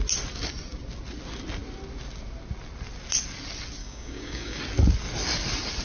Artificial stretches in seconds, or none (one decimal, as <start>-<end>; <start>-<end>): 3.8-4.6